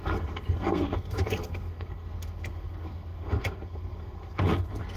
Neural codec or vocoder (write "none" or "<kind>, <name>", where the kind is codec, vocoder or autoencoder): codec, SNAC